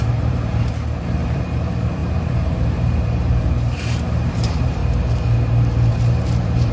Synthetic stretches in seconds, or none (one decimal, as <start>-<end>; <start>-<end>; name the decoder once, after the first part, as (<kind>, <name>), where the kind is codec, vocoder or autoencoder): 0.0-4.8 (vocoder, BigVGAN v2); 5.9-6.7